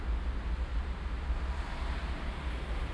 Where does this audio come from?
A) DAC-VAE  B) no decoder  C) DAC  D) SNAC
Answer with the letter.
B